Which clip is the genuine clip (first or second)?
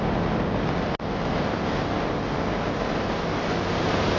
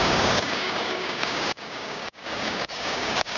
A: first